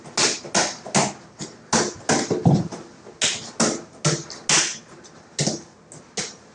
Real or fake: real